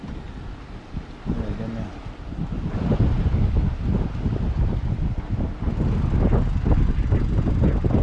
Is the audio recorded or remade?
recorded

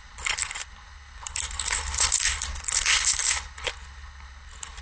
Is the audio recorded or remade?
remade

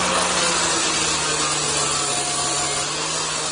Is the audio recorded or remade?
recorded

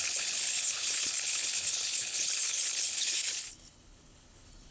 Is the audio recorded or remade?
remade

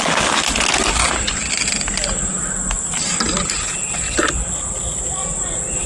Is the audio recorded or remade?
recorded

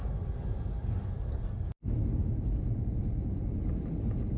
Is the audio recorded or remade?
recorded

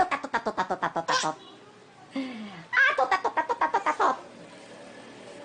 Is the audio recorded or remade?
recorded